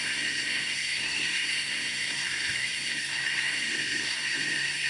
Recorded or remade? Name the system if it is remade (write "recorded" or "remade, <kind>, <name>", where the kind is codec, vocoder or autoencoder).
remade, codec, SNAC